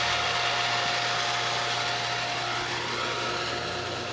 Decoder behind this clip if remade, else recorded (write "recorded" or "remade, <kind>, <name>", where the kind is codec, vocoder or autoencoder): recorded